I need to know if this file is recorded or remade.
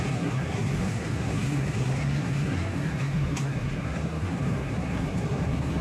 remade